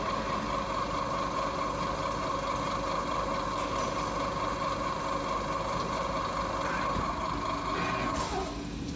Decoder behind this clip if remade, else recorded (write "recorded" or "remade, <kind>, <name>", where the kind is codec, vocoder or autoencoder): recorded